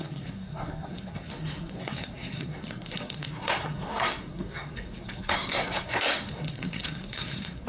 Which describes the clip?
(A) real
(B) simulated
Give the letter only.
B